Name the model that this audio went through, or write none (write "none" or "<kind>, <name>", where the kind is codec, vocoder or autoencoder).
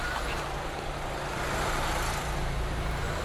none